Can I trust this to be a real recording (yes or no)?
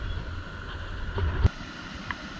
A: yes